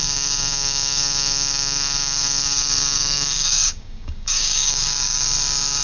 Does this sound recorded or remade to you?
remade